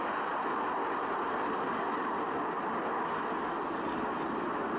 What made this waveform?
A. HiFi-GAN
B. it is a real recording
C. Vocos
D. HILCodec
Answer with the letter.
B